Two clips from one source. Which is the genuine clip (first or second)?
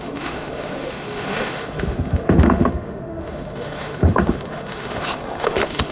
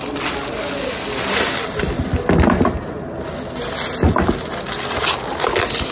second